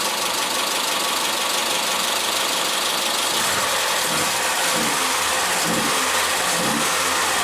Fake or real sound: real